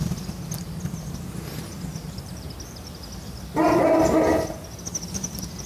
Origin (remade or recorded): recorded